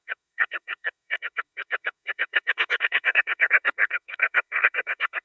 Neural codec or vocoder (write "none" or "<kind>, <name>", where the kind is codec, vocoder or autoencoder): codec, SNAC